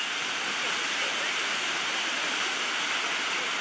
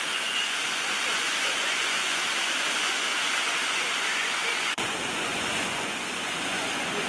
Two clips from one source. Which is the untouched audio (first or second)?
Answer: first